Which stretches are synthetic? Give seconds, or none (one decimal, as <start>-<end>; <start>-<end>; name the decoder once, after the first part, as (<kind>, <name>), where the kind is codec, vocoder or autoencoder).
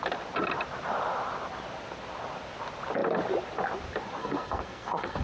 4.2-5.2 (codec, SNAC)